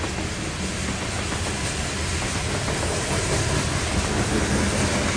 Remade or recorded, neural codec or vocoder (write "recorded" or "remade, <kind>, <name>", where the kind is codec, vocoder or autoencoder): recorded